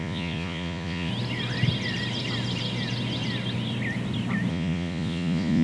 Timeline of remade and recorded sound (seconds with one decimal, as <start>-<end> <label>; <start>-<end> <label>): 0.0-1.1 remade; 1.1-4.5 recorded; 4.5-5.6 remade